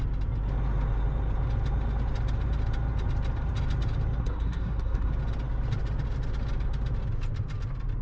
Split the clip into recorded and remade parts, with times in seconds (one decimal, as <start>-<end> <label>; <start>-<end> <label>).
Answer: 0.0-4.2 recorded; 4.2-5.1 remade; 5.1-8.0 recorded